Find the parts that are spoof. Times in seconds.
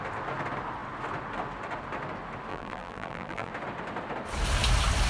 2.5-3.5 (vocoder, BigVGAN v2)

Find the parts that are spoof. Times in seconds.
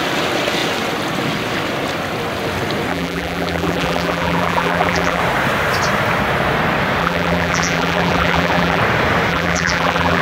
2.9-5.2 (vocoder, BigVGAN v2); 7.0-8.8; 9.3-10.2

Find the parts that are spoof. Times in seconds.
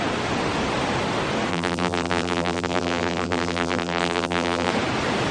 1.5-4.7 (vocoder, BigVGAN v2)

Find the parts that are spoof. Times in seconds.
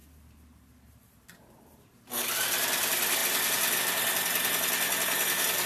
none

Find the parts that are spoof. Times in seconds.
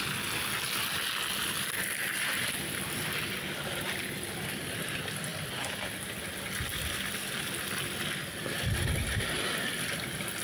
5.3-6.2 (vocoder, BigVGAN v2); 6.7-7.4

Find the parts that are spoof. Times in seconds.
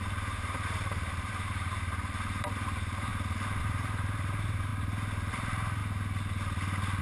0.0-3.1 (vocoder, BigVGAN v2); 3.6-4.7; 5.3-5.8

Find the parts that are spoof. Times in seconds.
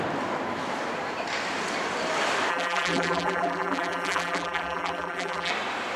2.5-5.5 (vocoder, BigVGAN v2)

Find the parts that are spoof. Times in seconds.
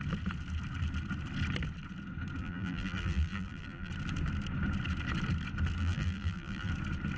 2.4-3.9 (vocoder, BigVGAN v2); 5.8-6.7